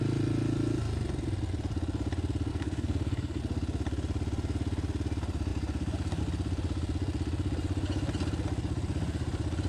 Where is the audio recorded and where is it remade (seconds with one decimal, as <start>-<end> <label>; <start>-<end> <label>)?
0.0-2.5 recorded; 2.5-3.4 remade; 3.4-9.7 recorded